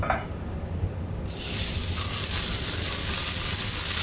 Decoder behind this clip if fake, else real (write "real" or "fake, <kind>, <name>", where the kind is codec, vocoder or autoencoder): real